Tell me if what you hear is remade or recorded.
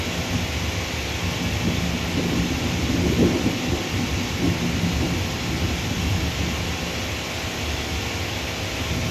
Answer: recorded